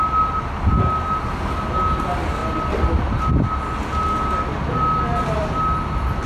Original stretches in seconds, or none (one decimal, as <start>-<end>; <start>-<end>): 0.0-6.3